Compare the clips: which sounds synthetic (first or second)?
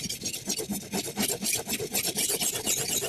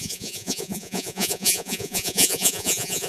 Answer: second